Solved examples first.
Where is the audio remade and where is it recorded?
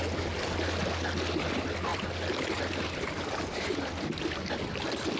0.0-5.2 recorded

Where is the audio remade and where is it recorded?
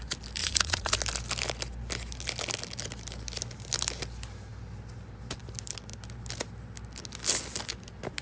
0.0-0.4 recorded; 0.4-0.9 remade; 0.9-8.2 recorded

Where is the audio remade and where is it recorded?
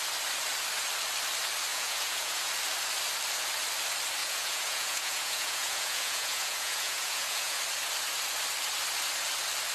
0.0-1.7 recorded; 1.7-2.5 remade; 2.5-4.2 recorded; 4.2-7.6 remade; 7.6-9.7 recorded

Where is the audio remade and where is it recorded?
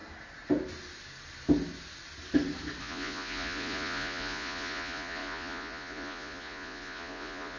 0.0-2.8 recorded; 2.8-7.6 remade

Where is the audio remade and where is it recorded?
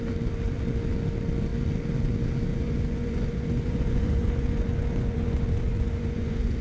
0.0-2.5 recorded; 2.5-6.6 remade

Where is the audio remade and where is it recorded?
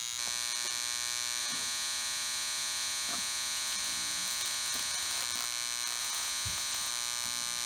0.0-1.4 recorded; 1.4-5.2 remade; 5.2-6.0 recorded; 6.0-6.9 remade; 6.9-7.7 recorded